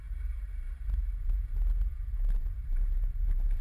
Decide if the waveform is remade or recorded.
remade